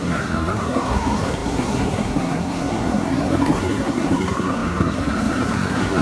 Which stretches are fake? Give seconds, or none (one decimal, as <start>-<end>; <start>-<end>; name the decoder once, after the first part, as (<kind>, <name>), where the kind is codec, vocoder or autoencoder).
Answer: 0.0-6.0 (codec, SNAC)